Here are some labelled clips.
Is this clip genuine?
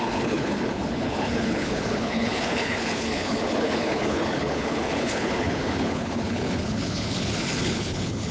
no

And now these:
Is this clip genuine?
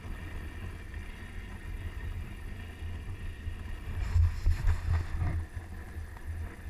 yes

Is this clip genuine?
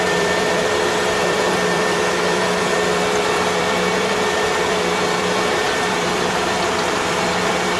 no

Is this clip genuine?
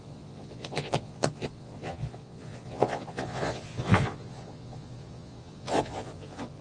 no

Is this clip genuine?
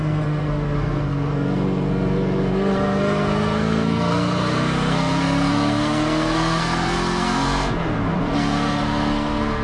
no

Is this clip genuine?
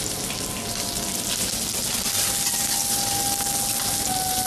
yes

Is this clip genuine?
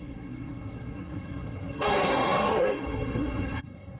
no